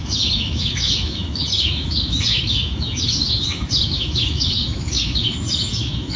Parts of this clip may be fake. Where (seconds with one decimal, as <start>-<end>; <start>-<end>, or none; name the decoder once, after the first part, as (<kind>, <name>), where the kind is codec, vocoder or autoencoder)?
0.0-6.2 (autoencoder, DAC-VAE)